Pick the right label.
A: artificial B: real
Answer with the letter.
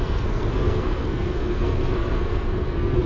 A